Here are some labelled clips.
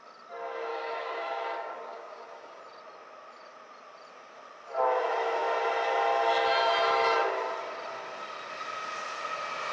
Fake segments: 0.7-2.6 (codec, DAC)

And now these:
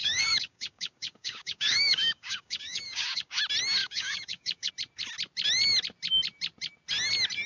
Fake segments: 0.0-3.4 (codec, DAC); 3.8-4.7

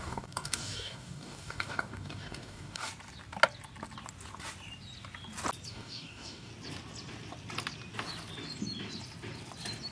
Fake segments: 0.0-2.9 (codec, DAC); 5.7-6.5

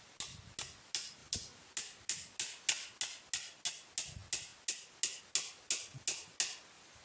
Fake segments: none

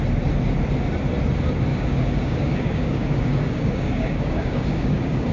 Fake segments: 1.7-5.3 (codec, DAC)

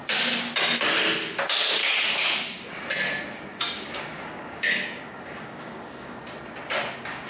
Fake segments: 1.8-2.7 (codec, DAC); 3.5-6.2

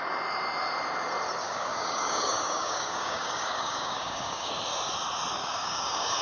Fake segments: 1.4-4.5 (codec, DAC); 5.4-6.2

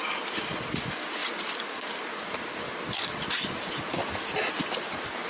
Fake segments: none